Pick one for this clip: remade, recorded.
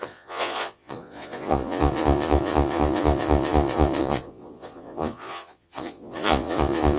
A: remade